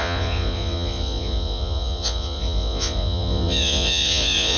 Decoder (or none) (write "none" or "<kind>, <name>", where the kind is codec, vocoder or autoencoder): vocoder, Vocos